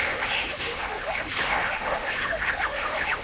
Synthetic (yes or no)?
yes